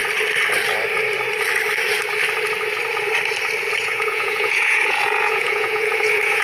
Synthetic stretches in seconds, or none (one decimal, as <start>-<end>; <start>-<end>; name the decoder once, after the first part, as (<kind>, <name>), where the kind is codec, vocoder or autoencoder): 3.8-6.4 (vocoder, Vocos)